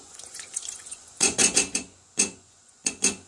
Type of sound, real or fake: fake